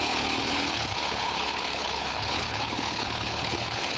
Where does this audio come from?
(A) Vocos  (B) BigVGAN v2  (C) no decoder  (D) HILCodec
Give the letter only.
D